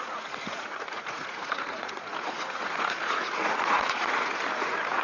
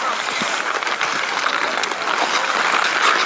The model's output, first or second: first